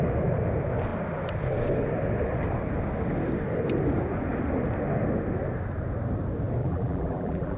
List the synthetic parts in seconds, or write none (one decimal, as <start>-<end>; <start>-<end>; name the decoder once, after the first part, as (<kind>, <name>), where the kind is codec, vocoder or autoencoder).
6.6-7.6 (vocoder, BigVGAN v2)